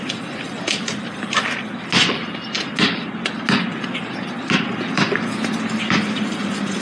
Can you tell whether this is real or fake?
real